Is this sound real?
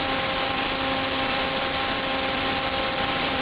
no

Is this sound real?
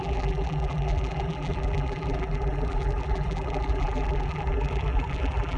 no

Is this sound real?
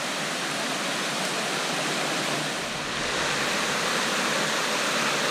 yes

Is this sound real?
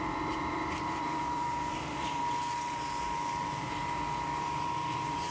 no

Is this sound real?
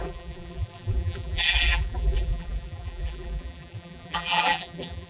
no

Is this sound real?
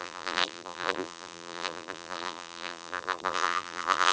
no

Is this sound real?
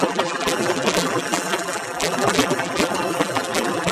no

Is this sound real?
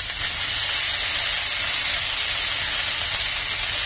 yes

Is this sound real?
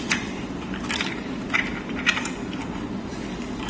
yes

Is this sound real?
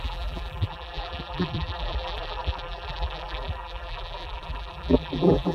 no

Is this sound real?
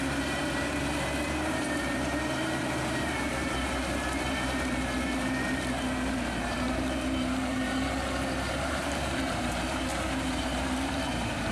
no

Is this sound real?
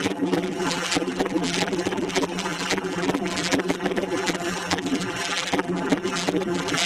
no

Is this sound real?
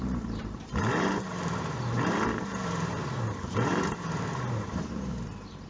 no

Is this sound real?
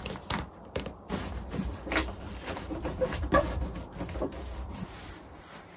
no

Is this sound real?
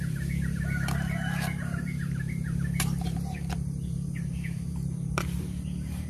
no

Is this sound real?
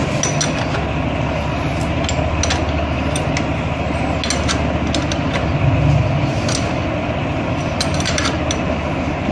yes